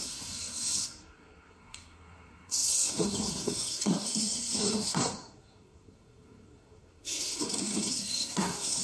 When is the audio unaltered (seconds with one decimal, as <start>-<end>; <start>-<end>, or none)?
none